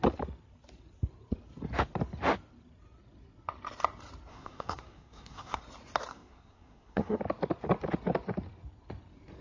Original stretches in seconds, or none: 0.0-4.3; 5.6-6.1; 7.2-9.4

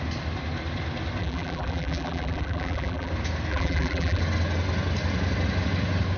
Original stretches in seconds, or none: 0.0-1.2; 3.1-3.5; 4.2-6.2

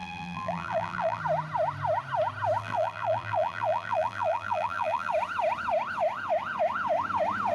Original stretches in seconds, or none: 1.2-2.6; 5.1-7.5

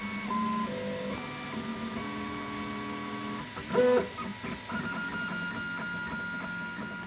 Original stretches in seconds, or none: 0.0-7.1